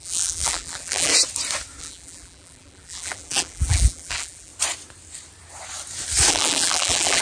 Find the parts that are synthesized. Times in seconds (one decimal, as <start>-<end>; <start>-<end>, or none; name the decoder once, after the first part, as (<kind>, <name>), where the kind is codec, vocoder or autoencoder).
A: 0.0-1.1 (vocoder, BigVGAN v2); 1.8-4.5; 6.3-7.2